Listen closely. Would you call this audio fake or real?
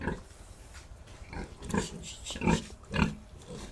fake